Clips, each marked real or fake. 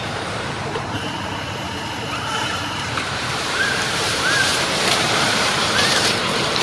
fake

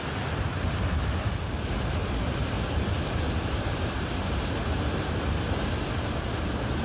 real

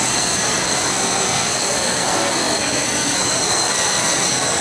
fake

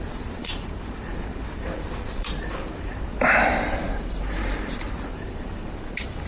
fake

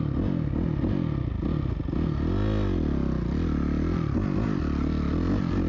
real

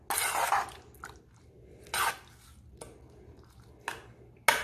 real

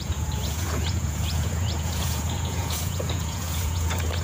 fake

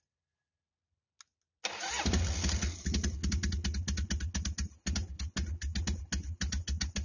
real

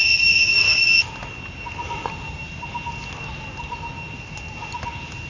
real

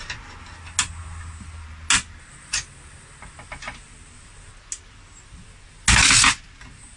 real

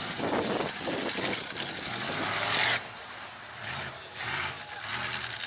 real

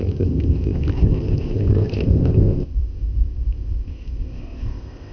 fake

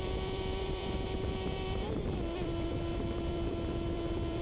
fake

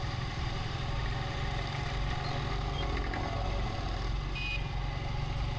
real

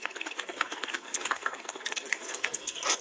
fake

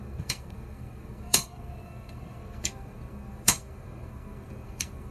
fake